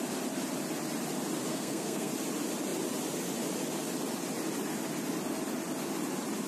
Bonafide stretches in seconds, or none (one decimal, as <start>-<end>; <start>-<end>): 0.0-1.5; 2.1-6.5